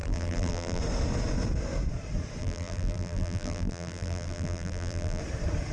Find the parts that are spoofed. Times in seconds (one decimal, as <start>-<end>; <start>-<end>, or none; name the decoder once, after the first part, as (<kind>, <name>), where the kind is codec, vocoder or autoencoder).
0.0-0.8 (vocoder, BigVGAN v2); 2.4-5.2